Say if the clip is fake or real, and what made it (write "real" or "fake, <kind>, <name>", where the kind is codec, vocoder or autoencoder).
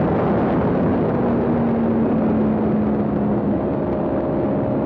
real